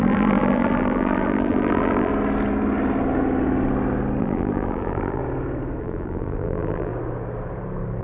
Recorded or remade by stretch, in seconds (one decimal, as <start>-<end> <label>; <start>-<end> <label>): 0.0-2.1 remade; 2.1-4.2 recorded; 4.2-5.2 remade; 5.2-5.8 recorded; 5.8-6.9 remade; 6.9-8.0 recorded